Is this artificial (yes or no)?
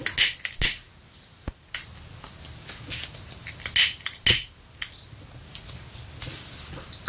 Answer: no